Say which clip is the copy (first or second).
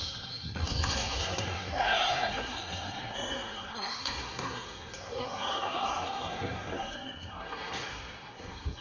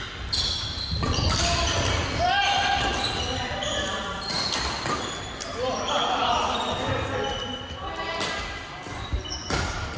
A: first